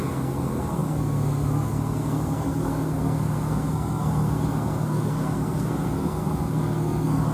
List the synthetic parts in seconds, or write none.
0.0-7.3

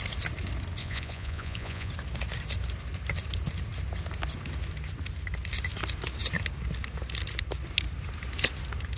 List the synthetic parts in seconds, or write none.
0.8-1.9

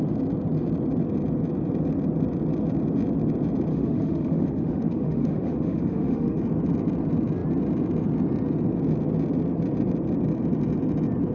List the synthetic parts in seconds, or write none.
3.7-6.4

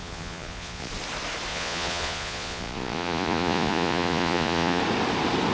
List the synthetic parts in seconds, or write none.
0.0-0.9; 1.5-4.8

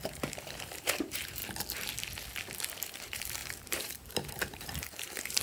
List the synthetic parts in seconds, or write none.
0.0-1.4; 2.9-5.4